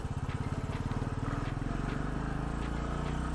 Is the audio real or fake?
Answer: real